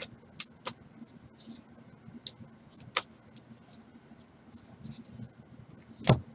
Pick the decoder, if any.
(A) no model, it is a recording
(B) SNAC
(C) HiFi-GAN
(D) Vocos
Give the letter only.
A